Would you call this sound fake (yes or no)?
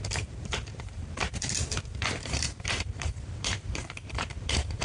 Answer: yes